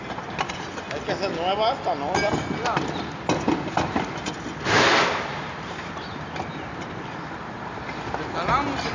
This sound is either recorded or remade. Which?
recorded